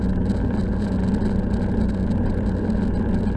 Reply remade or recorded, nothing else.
recorded